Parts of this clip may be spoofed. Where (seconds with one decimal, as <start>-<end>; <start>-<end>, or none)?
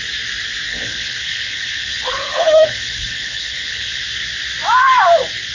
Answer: 0.7-4.0